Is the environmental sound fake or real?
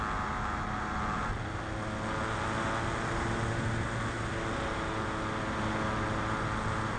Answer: real